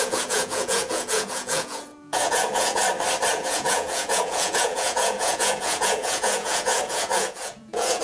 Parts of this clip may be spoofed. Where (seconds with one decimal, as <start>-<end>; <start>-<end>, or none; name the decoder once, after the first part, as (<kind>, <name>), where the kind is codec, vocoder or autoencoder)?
0.0-2.8 (vocoder, Vocos); 3.3-8.0